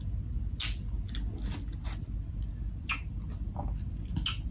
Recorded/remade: recorded